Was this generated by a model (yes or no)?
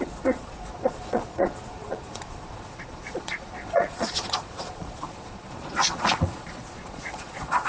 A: yes